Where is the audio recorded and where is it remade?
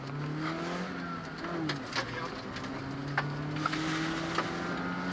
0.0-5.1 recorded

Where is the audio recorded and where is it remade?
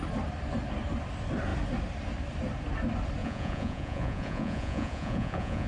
0.0-3.2 recorded; 3.2-5.7 remade